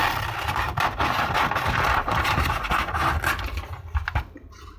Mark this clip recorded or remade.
recorded